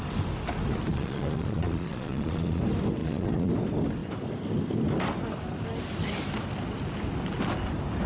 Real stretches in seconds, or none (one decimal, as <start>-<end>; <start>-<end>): 0.0-0.9; 2.6-3.0; 3.5-8.1

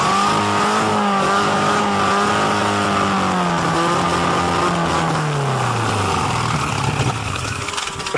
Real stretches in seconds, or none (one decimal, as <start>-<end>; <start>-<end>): 0.0-0.9; 2.0-7.2; 7.7-8.2

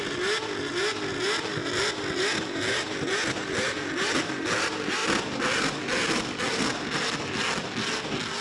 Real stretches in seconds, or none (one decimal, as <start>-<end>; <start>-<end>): 0.0-8.4

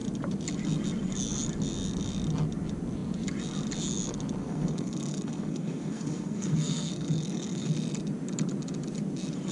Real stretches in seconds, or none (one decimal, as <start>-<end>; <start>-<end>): 0.0-4.4; 7.7-9.5

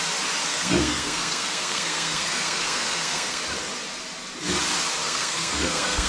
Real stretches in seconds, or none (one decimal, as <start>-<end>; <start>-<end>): 0.0-0.5; 3.4-5.0

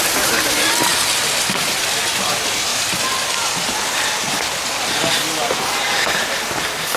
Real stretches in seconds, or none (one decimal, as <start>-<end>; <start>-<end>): 0.0-7.0

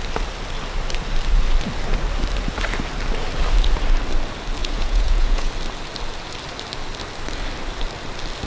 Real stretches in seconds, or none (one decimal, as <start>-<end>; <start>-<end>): 0.0-4.6; 5.5-8.5